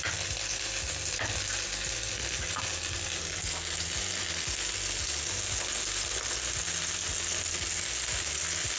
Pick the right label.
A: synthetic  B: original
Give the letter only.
B